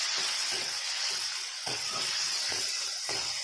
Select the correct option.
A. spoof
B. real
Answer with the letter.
A